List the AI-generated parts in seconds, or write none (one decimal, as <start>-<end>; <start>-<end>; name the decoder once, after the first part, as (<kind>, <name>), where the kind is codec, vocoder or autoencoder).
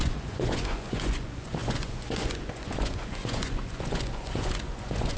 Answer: 0.0-5.2 (vocoder, Vocos)